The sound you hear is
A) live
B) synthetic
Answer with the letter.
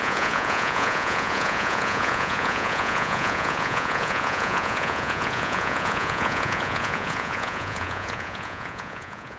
B